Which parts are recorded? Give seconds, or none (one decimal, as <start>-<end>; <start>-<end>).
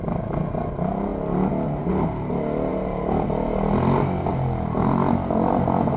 0.0-6.0